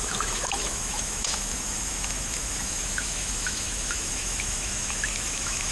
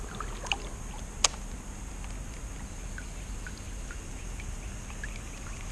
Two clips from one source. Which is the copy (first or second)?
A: first